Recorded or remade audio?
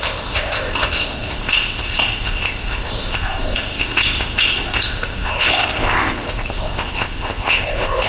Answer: remade